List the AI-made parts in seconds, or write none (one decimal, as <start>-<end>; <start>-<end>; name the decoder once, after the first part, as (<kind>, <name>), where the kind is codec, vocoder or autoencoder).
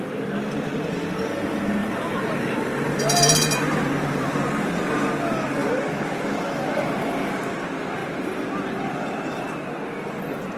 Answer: 1.8-4.5 (vocoder, BigVGAN v2)